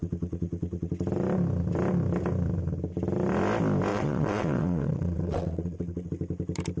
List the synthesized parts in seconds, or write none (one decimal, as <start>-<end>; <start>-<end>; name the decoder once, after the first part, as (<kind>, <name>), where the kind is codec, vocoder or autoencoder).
0.0-0.9 (vocoder, WaveNeXt); 3.9-6.1